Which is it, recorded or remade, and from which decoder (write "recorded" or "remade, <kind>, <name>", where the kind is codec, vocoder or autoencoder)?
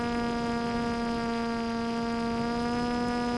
recorded